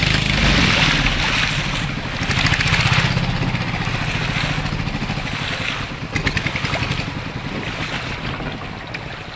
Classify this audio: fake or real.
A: real